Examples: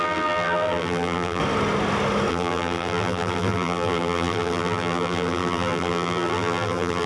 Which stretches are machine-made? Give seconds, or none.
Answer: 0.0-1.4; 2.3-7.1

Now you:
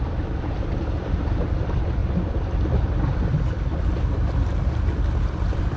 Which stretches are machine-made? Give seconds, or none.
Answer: 0.0-2.0